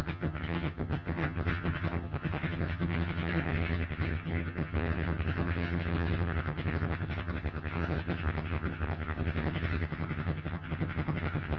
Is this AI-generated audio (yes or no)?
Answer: yes